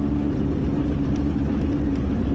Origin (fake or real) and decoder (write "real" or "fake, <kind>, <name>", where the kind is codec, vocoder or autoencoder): real